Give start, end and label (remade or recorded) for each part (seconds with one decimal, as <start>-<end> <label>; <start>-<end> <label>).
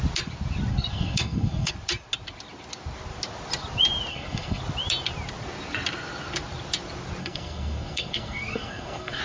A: 0.0-0.7 recorded; 0.7-1.7 remade; 1.7-4.1 recorded; 4.1-4.6 remade; 4.6-7.2 recorded; 7.2-9.2 remade